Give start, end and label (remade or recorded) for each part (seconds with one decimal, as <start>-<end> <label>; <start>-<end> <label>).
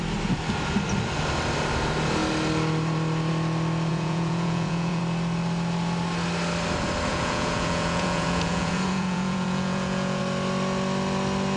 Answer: 0.0-3.9 recorded; 3.9-5.0 remade; 5.0-7.1 recorded; 7.1-10.2 remade; 10.2-11.6 recorded